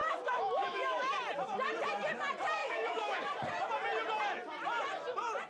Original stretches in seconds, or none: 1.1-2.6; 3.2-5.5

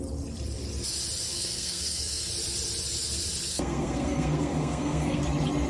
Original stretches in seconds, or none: 0.0-1.3; 2.3-3.5; 5.2-5.7